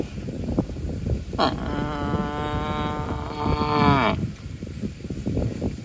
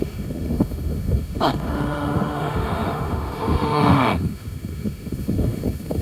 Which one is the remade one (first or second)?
second